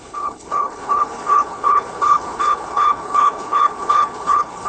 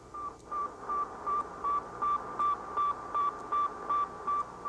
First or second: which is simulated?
first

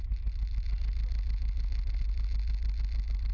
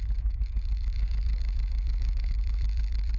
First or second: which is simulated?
second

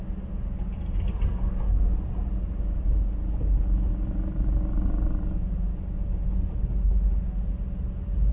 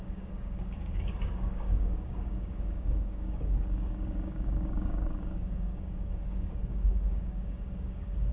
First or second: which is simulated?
second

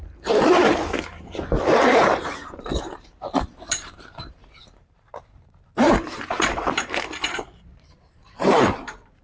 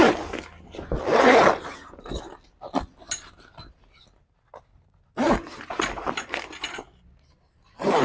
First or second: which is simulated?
first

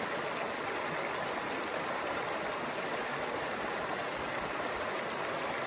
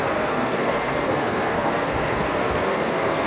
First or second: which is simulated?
second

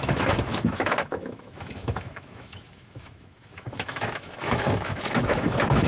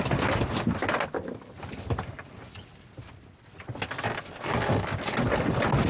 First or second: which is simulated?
first